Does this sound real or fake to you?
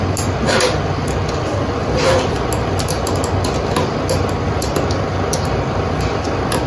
real